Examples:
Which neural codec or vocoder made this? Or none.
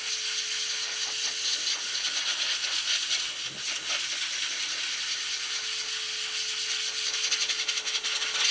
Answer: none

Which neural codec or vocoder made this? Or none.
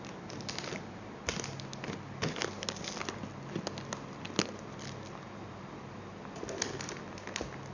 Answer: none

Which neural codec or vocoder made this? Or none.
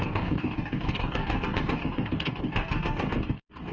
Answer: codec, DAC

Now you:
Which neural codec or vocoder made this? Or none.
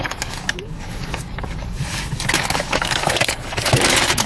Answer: codec, DAC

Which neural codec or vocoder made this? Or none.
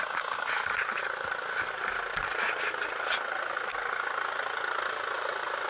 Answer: none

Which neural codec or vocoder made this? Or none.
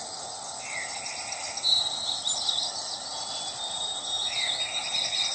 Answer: none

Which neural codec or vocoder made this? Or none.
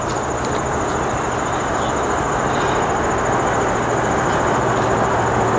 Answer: none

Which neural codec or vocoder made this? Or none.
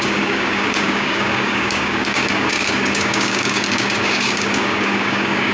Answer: codec, DAC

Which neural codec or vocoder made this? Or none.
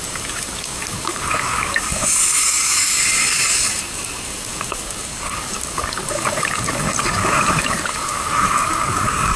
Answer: codec, DAC